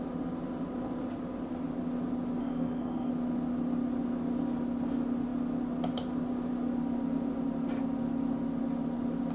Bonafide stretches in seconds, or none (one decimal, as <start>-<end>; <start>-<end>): 0.0-2.4; 3.1-9.3